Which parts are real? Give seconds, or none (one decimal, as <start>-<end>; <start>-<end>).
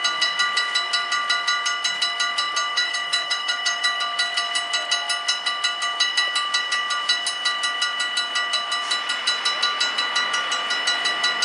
0.0-2.7; 4.0-11.4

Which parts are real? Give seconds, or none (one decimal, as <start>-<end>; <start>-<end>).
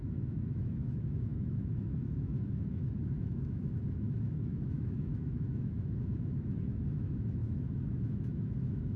none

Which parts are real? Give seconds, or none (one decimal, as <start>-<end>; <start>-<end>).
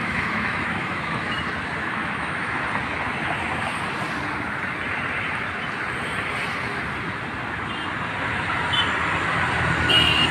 1.3-1.8; 2.6-10.3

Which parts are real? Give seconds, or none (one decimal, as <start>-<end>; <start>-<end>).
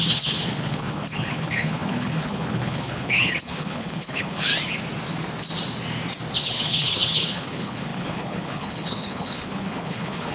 4.5-6.4